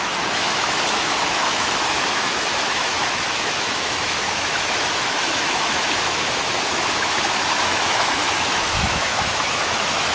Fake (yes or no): yes